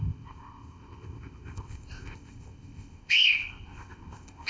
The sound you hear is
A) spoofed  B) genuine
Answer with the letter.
A